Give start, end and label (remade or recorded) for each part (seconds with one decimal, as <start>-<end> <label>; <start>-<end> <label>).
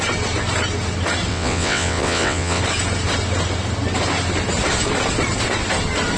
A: 0.0-1.3 recorded; 1.3-2.6 remade; 2.6-6.2 recorded